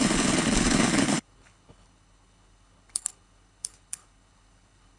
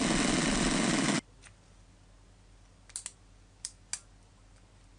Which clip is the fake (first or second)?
first